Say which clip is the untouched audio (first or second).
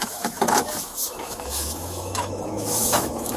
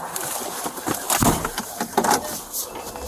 second